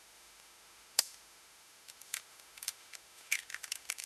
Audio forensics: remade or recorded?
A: remade